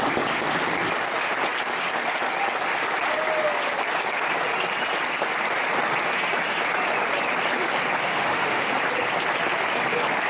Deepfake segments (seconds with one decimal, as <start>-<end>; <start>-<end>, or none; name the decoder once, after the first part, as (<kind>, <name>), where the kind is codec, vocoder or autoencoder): 8.0-8.7 (autoencoder, DAC-VAE)